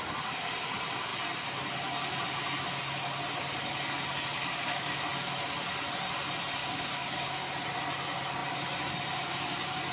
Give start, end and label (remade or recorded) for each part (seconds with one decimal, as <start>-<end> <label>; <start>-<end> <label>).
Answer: 0.0-4.4 recorded; 4.4-5.0 remade; 5.0-6.6 recorded; 6.6-7.5 remade; 7.5-9.9 recorded